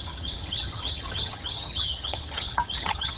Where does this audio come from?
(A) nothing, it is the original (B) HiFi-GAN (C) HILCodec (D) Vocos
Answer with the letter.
B